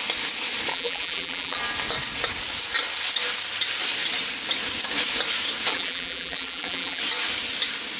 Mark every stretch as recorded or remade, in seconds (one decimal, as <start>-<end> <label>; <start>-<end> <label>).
0.0-0.7 recorded; 0.7-1.6 remade; 1.6-5.7 recorded; 5.7-7.0 remade; 7.0-8.0 recorded